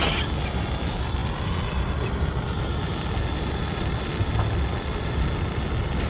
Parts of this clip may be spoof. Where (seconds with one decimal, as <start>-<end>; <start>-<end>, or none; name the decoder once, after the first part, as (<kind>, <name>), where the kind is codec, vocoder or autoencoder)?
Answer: none